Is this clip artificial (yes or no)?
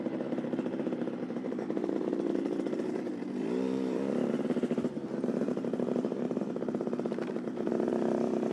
yes